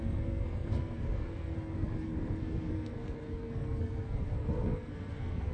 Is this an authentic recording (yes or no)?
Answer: no